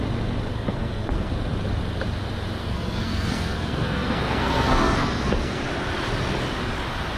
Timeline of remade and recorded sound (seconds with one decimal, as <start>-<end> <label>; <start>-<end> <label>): 0.0-0.5 recorded; 0.5-1.3 remade; 1.3-2.6 recorded; 2.6-5.6 remade; 5.6-7.2 recorded